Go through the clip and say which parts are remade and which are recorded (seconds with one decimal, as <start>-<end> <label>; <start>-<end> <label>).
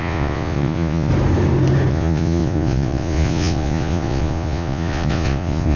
0.0-1.1 remade; 1.1-1.9 recorded; 1.9-5.8 remade